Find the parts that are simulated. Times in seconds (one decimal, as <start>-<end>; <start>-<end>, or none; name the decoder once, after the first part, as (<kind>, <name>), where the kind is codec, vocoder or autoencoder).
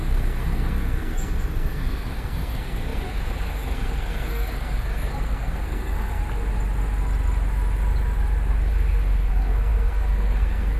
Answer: 0.0-6.2 (codec, SNAC); 8.7-10.8